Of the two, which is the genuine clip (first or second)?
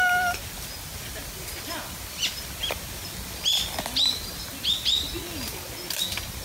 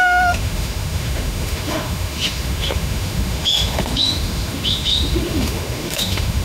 first